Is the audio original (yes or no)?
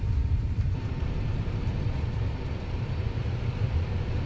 no